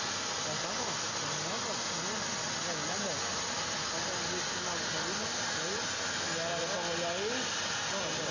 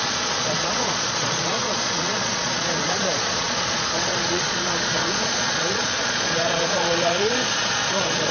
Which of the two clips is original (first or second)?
first